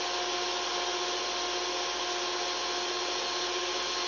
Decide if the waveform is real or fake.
real